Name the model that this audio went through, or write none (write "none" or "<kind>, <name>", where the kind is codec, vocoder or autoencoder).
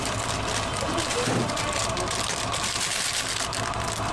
none